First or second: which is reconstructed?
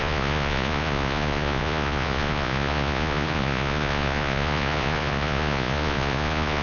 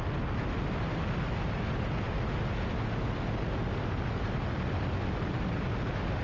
first